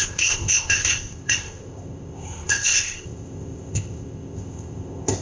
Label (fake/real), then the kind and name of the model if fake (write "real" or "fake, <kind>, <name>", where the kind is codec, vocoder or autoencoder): fake, codec, ZipCodec